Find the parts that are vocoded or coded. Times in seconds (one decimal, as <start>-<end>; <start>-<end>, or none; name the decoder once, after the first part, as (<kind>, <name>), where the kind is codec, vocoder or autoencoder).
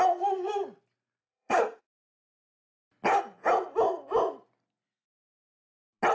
1.2-1.8 (codec, SNAC)